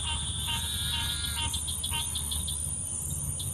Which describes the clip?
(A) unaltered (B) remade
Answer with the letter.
A